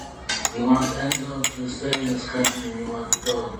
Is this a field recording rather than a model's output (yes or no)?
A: yes